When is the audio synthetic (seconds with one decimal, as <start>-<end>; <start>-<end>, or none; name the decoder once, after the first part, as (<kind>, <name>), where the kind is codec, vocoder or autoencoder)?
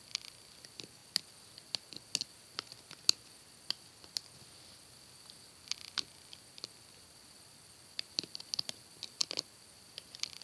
none